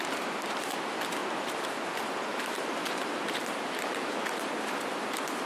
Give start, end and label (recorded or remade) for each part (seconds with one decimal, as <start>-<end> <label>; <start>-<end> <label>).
0.0-1.2 recorded; 1.2-4.5 remade; 4.5-5.5 recorded